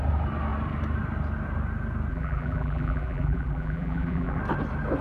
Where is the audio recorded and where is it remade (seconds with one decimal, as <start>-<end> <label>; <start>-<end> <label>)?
0.0-2.1 recorded; 2.1-4.4 remade; 4.4-5.0 recorded